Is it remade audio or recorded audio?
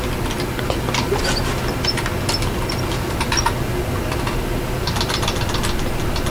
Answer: recorded